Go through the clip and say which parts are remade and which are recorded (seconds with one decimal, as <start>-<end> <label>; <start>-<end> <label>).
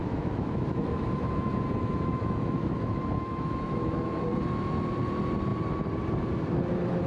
0.0-4.3 remade; 4.3-7.1 recorded